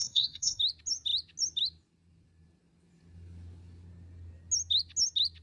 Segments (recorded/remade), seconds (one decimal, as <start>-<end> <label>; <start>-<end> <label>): 0.0-0.6 remade; 0.6-5.4 recorded